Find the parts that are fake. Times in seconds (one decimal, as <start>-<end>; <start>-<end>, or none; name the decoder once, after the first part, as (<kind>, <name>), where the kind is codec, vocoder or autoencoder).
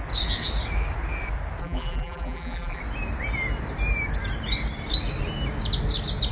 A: 1.6-2.8 (vocoder, BigVGAN v2)